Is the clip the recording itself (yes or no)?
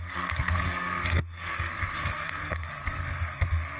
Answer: no